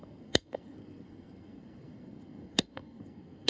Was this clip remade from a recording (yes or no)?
yes